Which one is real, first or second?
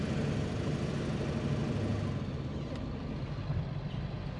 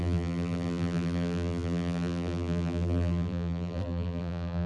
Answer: first